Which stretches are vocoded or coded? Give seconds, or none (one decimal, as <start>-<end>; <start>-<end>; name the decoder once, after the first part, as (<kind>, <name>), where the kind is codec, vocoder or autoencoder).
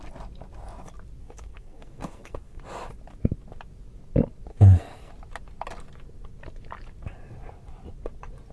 1.2-2.6 (codec, SNAC); 4.5-5.1